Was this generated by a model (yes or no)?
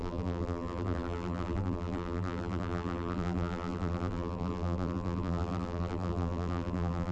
yes